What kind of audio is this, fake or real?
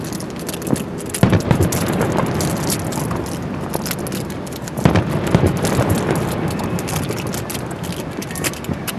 real